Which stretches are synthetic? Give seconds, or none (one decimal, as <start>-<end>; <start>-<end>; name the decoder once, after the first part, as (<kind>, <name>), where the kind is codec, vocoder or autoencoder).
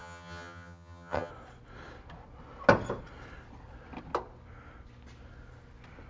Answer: 0.0-1.3 (vocoder, HiFi-GAN)